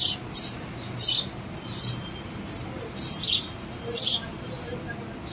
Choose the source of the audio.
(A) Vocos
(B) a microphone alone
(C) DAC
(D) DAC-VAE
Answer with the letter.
B